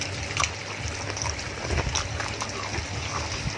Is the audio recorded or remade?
recorded